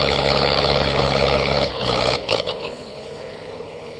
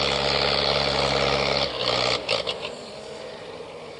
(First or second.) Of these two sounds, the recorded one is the second